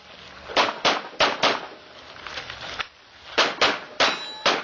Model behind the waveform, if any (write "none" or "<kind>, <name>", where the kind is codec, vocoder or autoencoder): none